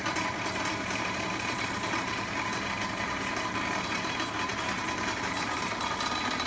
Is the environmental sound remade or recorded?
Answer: remade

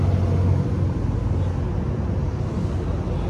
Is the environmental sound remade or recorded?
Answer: recorded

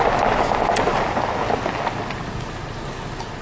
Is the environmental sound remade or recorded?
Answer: recorded